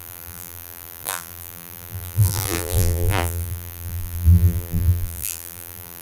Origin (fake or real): fake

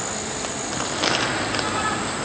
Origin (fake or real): real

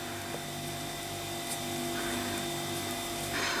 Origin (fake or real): real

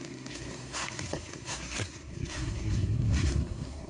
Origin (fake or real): fake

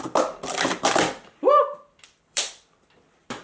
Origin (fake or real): fake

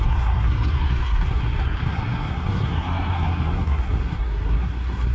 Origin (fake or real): fake